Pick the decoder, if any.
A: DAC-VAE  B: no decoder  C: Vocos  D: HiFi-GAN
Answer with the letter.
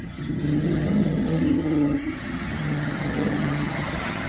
D